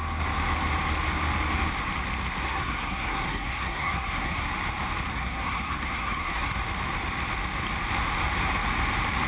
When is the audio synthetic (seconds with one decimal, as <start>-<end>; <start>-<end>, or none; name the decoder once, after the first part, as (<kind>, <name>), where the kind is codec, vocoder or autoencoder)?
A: 2.4-4.5 (codec, SNAC); 5.1-6.6